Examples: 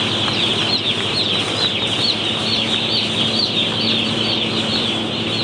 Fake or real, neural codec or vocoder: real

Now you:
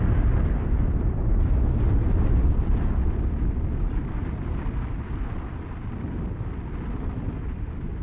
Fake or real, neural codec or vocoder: fake, vocoder, BigVGAN v2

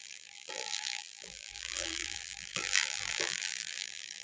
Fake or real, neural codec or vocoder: fake, vocoder, BigVGAN v2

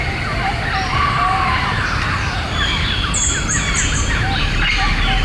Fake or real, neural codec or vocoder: real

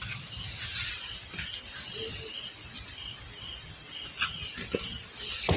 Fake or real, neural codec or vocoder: real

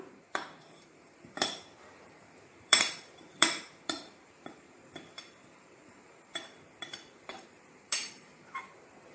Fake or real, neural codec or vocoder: fake, vocoder, BigVGAN v2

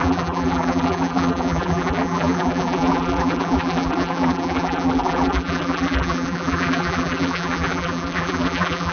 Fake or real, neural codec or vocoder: fake, vocoder, BigVGAN v2